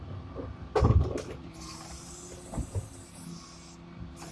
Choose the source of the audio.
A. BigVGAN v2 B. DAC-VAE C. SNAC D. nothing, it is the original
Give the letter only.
D